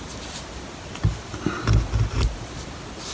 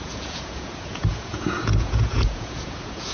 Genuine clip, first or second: first